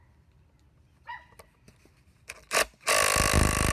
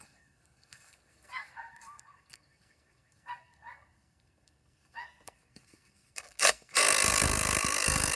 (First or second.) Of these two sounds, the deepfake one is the second